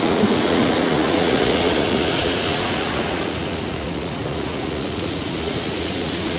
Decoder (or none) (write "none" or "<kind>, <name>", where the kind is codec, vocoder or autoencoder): vocoder, Vocos